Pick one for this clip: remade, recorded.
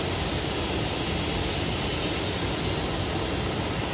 recorded